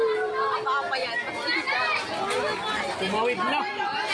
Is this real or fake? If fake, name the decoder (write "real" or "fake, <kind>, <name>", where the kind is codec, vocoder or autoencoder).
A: real